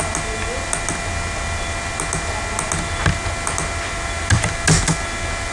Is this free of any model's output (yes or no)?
yes